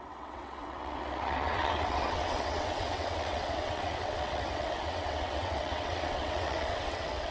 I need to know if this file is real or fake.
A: fake